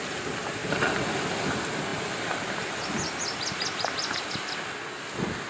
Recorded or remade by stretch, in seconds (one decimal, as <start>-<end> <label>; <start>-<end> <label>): 0.0-5.5 recorded